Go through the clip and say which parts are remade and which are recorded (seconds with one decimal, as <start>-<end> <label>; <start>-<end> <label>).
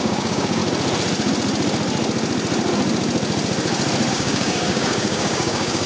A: 0.0-0.6 remade; 0.6-4.1 recorded; 4.1-5.9 remade